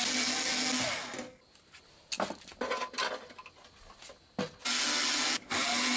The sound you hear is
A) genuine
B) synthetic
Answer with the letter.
A